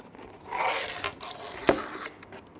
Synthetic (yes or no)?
no